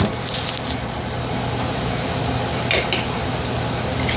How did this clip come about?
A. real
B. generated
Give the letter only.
A